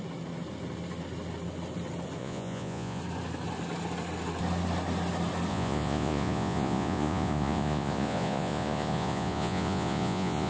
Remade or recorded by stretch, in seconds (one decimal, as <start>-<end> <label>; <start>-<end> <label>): 0.0-2.2 recorded; 2.2-3.0 remade; 3.0-5.5 recorded; 5.5-10.5 remade